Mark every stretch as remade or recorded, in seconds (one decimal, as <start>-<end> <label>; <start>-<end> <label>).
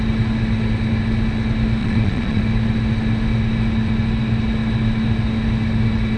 0.0-1.8 recorded; 1.8-2.4 remade; 2.4-6.2 recorded